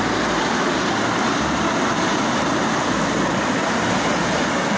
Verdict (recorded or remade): recorded